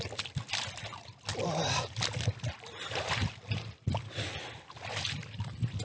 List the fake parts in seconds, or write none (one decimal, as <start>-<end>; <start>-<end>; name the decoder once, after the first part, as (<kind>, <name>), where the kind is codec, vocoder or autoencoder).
none